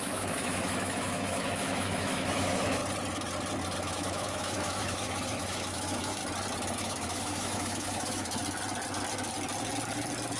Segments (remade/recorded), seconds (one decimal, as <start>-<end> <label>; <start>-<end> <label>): 0.0-2.8 remade; 2.8-3.8 recorded; 3.8-6.2 remade; 6.2-6.8 recorded; 6.8-8.4 remade; 8.4-10.4 recorded